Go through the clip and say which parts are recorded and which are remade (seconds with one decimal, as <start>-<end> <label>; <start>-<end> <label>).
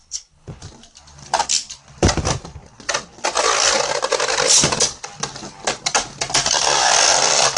0.0-0.6 remade; 0.6-7.6 recorded